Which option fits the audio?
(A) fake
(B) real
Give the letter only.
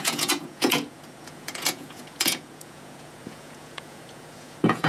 A